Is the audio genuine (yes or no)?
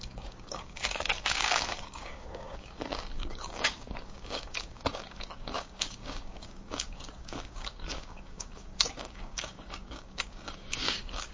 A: no